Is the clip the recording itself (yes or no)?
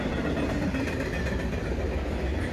yes